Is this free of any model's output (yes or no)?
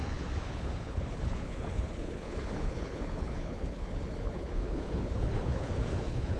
no